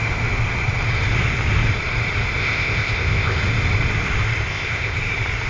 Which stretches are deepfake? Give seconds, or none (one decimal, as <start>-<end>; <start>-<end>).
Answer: 2.4-3.4; 4.5-5.0